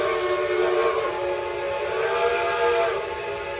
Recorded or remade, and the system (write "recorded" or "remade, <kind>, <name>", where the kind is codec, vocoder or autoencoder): recorded